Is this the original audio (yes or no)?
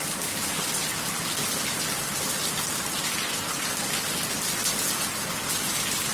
yes